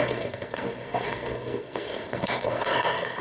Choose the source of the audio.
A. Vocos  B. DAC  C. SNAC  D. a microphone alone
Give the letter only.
C